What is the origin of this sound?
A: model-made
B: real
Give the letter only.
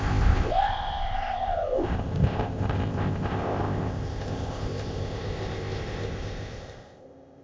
A